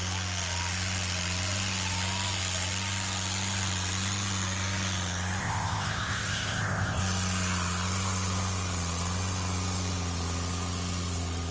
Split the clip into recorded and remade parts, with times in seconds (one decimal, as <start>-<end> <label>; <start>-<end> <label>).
0.0-5.4 recorded; 5.4-7.0 remade; 7.0-11.5 recorded